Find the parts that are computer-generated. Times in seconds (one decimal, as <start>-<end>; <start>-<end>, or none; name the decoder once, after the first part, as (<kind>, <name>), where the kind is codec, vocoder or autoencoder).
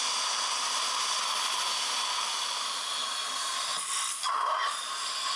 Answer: 3.7-4.3 (vocoder, BigVGAN v2)